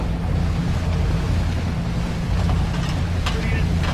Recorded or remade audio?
recorded